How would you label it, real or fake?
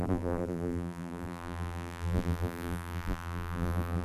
fake